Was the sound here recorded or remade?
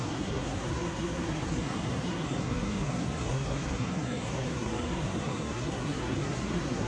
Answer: remade